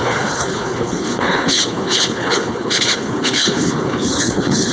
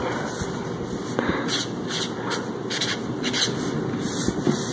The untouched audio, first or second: second